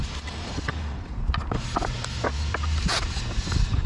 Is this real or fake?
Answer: real